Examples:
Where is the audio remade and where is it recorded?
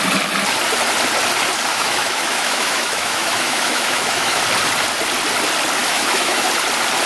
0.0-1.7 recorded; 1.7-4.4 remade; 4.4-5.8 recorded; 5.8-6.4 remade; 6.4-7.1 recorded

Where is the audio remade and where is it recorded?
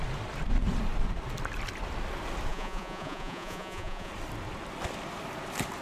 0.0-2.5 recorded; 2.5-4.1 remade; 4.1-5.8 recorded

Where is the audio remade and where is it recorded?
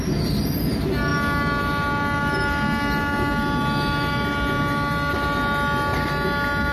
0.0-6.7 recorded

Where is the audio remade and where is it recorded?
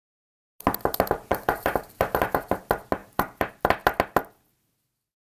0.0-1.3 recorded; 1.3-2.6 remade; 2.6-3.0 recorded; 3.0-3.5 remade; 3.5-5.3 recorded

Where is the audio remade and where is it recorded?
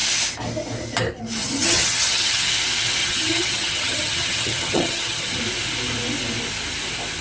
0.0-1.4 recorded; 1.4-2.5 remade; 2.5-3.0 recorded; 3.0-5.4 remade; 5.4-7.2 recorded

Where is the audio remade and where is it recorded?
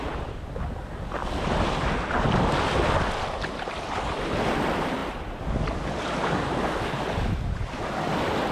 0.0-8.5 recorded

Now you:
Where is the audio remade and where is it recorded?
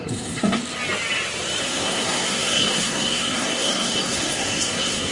0.0-0.6 remade; 0.6-1.6 recorded; 1.6-5.1 remade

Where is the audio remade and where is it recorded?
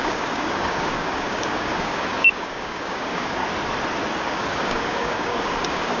0.0-3.4 remade; 3.4-4.2 recorded; 4.2-6.0 remade